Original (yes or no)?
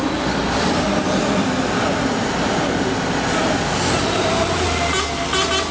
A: yes